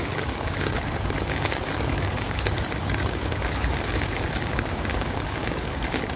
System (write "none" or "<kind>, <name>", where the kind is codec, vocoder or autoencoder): codec, DAC